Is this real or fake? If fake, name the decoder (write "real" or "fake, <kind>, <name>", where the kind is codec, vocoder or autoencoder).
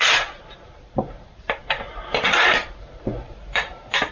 fake, vocoder, BigVGAN v2